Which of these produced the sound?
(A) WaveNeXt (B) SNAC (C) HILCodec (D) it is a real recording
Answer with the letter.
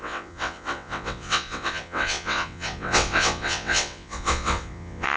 A